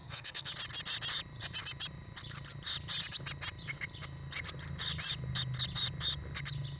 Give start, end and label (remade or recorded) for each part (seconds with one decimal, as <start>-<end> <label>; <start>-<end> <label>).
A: 0.0-0.5 remade; 0.5-6.8 recorded